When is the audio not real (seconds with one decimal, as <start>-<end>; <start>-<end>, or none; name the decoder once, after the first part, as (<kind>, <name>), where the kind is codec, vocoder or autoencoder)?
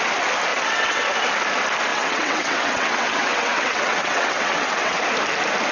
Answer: 0.5-1.0 (vocoder, WaveNeXt); 1.9-5.0